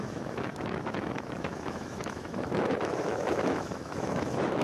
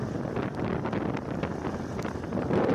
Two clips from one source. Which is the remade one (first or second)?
first